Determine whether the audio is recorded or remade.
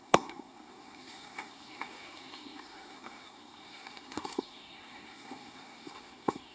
remade